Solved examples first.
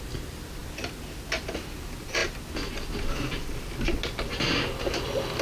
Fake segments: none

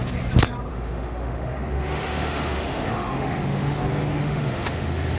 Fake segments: 0.7-3.8 (autoencoder, DAC-VAE); 4.2-5.2

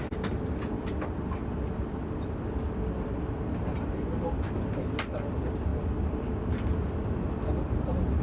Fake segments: none

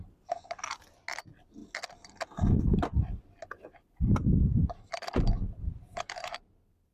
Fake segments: none

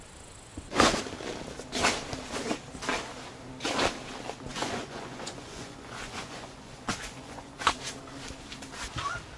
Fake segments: 0.5-1.0 (vocoder, Vocos); 4.5-7.7